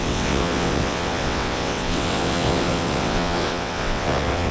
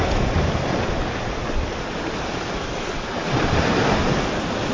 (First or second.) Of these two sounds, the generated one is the first